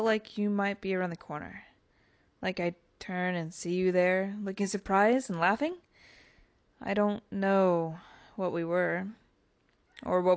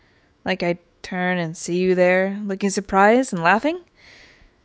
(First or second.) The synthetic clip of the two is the second